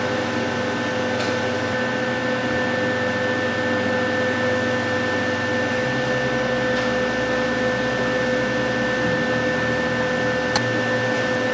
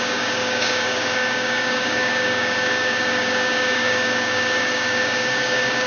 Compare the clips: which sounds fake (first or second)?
second